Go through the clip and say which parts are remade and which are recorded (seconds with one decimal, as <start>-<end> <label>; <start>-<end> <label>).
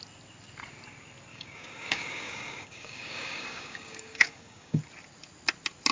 0.0-1.3 recorded; 1.3-4.8 remade; 4.8-5.9 recorded